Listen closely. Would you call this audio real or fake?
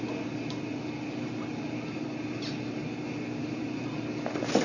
real